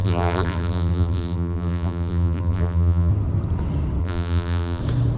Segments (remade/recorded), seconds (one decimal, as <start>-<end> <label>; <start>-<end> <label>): 0.0-3.1 remade; 3.1-4.0 recorded; 4.0-4.8 remade; 4.8-5.2 recorded